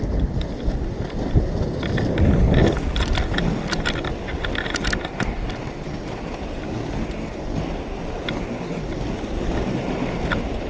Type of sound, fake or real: real